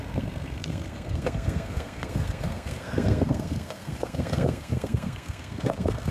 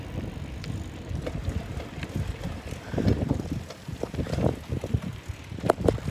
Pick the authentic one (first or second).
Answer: second